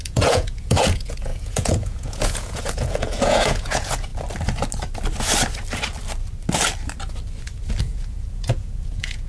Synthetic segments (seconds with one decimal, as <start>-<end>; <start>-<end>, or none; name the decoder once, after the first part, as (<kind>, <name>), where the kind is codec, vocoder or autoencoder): 0.0-4.1 (vocoder, Vocos); 7.8-9.3